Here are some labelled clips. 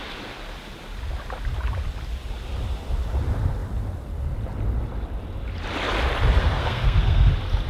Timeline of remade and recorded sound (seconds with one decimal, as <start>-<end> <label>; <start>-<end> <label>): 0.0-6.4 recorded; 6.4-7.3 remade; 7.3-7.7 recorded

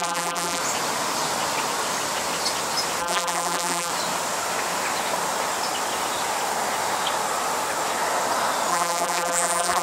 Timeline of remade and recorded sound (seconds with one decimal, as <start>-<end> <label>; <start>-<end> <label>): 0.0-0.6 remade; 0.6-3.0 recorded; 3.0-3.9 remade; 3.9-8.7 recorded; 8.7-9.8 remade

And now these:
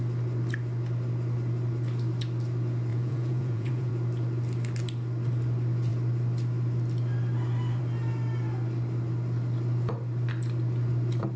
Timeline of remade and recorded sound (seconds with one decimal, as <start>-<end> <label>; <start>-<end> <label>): 0.0-2.9 recorded; 2.9-3.9 remade; 3.9-11.4 recorded

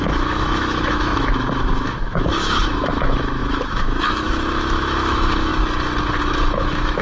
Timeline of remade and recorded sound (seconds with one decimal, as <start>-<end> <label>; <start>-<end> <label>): 0.0-5.5 remade; 5.5-6.2 recorded; 6.2-7.0 remade

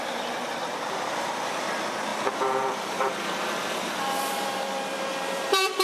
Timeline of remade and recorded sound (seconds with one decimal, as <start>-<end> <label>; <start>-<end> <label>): 0.0-5.8 remade